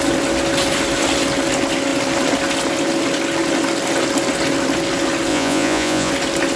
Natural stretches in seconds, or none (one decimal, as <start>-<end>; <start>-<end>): 0.0-5.3; 6.1-6.6